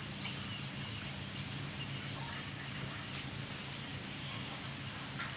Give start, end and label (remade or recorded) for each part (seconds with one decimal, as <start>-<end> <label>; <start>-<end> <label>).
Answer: 0.0-2.5 recorded; 2.5-3.1 remade; 3.1-3.9 recorded; 3.9-4.6 remade; 4.6-5.4 recorded